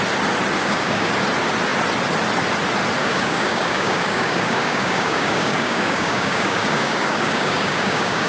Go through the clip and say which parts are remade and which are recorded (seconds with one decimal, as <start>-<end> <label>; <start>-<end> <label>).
0.0-0.6 recorded; 0.6-1.1 remade; 1.1-3.0 recorded; 3.0-8.3 remade